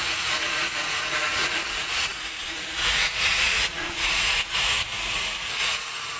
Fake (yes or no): yes